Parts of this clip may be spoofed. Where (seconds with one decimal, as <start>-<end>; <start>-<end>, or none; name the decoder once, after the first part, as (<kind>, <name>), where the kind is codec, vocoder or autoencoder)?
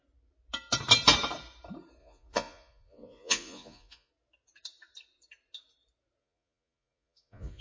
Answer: 2.0-4.1 (vocoder, Vocos); 6.2-7.6